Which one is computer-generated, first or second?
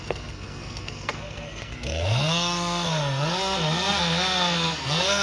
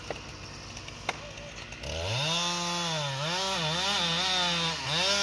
first